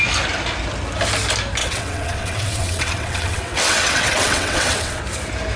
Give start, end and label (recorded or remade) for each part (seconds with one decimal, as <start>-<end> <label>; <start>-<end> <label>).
0.0-1.6 recorded; 1.6-5.0 remade; 5.0-5.6 recorded